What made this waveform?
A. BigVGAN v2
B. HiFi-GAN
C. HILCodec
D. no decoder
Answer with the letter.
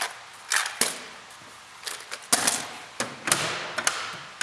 D